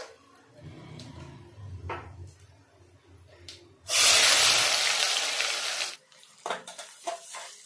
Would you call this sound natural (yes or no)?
yes